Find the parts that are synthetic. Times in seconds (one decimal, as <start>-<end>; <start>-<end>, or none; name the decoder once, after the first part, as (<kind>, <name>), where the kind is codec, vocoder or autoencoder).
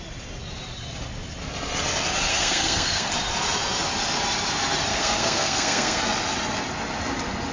2.3-3.1 (codec, SNAC); 4.9-6.0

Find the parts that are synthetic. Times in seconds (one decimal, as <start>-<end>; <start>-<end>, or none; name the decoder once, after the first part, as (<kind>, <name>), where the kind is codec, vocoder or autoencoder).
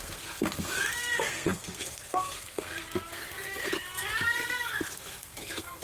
0.0-5.8 (codec, SNAC)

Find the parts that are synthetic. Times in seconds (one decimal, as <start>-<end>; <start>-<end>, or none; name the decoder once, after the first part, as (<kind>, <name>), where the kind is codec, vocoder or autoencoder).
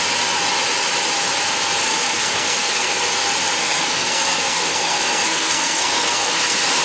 1.8-3.0 (codec, SNAC); 3.6-6.8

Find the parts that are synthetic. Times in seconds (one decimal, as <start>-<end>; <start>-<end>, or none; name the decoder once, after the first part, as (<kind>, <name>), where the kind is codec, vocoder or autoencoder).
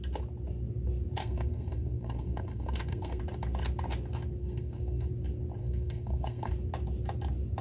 1.2-3.2 (codec, SNAC); 4.4-5.1; 5.6-6.5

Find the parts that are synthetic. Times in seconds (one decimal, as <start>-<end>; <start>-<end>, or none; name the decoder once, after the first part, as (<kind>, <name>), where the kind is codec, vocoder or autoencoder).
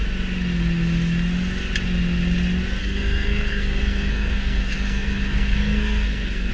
2.8-6.5 (codec, SNAC)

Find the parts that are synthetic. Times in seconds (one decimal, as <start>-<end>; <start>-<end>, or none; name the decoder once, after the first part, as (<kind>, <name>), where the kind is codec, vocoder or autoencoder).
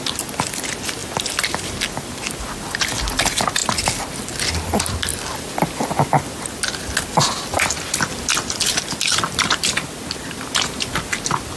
none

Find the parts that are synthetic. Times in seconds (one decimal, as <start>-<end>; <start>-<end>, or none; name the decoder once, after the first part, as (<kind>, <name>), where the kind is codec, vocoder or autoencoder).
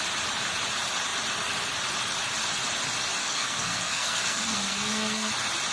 3.2-5.3 (codec, SNAC)